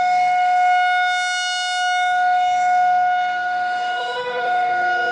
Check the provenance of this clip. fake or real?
fake